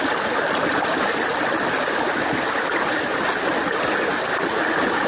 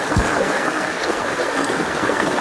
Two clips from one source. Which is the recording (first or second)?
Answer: first